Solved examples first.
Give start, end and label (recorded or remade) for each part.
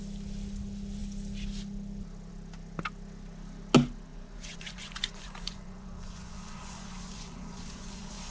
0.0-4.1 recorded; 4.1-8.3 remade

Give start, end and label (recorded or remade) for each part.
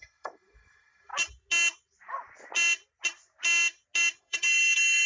0.0-1.1 remade; 1.1-4.2 recorded; 4.2-5.1 remade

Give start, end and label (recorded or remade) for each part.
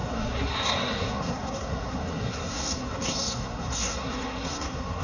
0.0-5.0 remade